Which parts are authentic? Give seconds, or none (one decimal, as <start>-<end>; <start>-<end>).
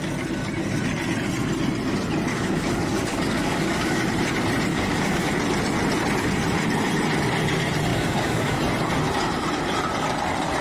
0.0-2.3; 4.0-4.7; 5.3-7.9; 8.6-10.6